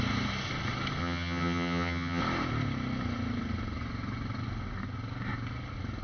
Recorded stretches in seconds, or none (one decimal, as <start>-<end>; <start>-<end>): 0.0-1.0; 2.2-6.0